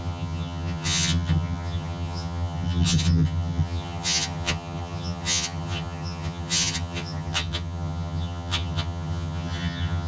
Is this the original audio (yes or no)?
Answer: no